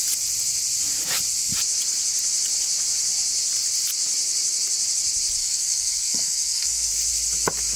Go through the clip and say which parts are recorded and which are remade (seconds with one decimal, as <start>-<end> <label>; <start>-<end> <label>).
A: 0.0-5.4 recorded; 5.4-6.9 remade; 6.9-7.8 recorded